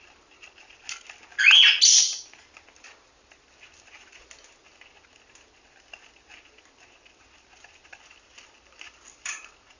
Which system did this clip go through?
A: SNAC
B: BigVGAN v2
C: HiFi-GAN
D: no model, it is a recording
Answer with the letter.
D